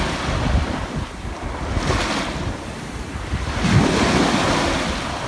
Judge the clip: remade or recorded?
recorded